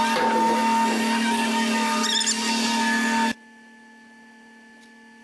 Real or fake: real